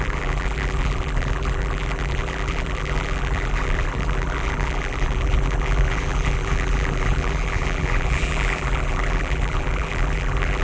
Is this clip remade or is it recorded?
remade